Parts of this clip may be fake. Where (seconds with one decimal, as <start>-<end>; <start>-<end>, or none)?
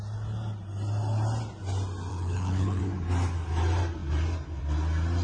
2.1-2.8